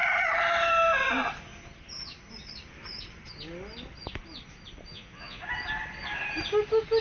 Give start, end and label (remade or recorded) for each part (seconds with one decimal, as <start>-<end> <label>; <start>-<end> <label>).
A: 0.0-4.9 recorded; 4.9-5.4 remade; 5.4-7.0 recorded